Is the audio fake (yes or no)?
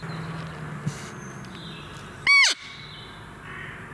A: no